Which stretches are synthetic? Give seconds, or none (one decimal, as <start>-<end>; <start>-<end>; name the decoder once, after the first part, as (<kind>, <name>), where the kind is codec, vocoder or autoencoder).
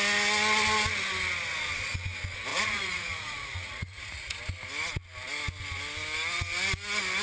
2.5-4.4 (vocoder, Vocos)